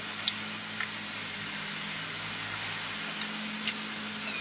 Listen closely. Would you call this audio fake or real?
real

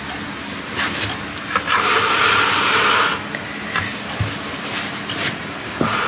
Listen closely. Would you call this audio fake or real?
real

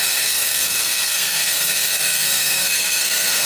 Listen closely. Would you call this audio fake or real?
fake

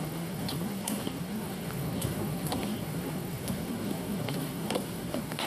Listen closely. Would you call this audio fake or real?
fake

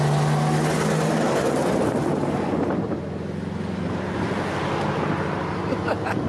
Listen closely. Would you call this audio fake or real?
real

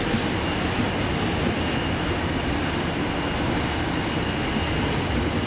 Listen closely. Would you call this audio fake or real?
real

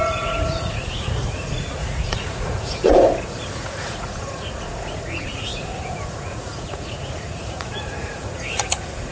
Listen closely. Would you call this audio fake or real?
fake